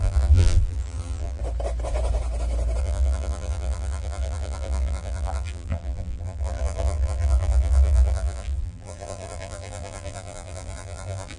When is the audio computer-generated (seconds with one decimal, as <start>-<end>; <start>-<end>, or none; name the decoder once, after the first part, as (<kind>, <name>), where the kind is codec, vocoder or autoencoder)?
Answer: 0.0-1.4 (vocoder, BigVGAN v2); 2.8-11.4